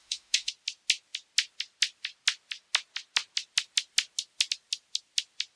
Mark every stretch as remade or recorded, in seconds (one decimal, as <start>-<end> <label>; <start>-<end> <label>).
0.0-0.5 remade; 0.5-5.6 recorded